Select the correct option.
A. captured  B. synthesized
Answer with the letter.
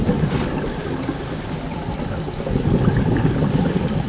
A